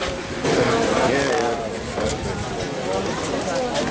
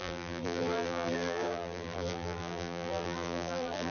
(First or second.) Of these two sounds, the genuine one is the first